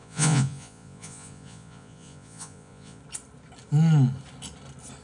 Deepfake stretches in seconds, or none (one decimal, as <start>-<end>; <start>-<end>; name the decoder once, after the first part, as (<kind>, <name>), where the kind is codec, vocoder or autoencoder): 0.0-3.0 (vocoder, Vocos)